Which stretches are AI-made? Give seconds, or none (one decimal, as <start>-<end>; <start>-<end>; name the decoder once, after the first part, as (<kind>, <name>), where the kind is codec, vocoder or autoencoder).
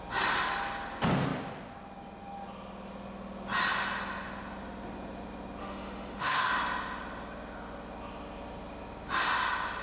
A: 5.6-6.5 (autoencoder, DAC-VAE)